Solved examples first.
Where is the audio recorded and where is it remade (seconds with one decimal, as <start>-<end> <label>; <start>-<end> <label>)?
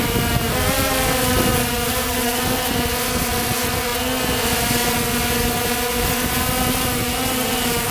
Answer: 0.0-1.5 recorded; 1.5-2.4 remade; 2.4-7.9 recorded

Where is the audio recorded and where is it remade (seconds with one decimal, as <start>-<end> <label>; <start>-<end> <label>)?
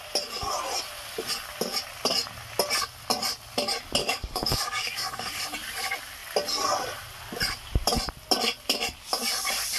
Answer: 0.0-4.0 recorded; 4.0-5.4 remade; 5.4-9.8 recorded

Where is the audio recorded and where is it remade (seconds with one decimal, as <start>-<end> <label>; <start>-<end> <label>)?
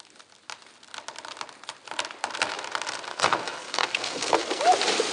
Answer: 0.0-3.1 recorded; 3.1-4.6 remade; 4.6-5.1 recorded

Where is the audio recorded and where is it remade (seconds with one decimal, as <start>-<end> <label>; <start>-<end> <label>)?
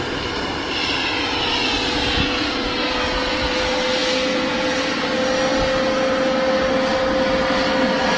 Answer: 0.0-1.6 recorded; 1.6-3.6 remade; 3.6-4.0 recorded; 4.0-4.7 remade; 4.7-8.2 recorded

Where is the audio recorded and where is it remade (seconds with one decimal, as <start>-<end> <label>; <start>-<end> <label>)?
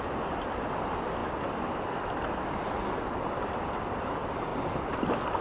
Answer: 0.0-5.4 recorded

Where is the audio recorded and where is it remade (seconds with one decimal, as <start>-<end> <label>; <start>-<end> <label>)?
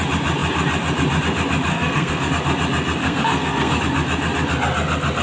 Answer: 0.0-1.7 recorded; 1.7-2.3 remade; 2.3-3.0 recorded; 3.0-3.8 remade; 3.8-5.2 recorded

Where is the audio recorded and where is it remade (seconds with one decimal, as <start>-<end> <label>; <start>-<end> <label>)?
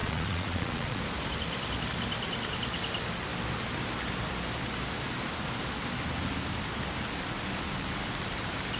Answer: 0.0-1.0 remade; 1.0-8.8 recorded